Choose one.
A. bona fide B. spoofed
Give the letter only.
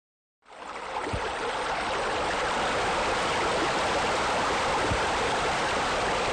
B